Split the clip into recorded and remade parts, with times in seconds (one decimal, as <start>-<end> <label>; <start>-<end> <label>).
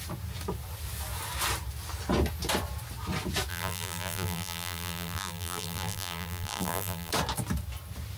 0.0-3.5 recorded; 3.5-7.1 remade; 7.1-8.2 recorded